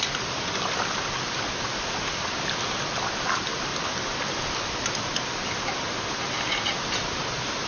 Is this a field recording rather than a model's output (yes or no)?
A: yes